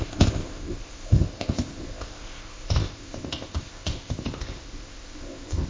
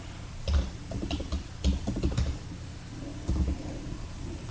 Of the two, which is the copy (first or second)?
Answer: first